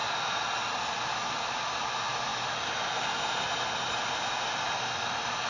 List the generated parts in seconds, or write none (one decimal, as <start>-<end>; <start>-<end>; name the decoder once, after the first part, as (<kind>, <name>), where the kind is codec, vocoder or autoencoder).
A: none